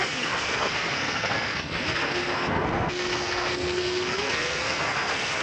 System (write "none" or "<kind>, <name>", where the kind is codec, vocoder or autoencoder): codec, SNAC